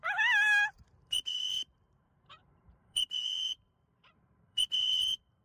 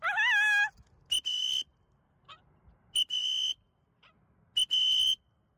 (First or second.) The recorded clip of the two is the second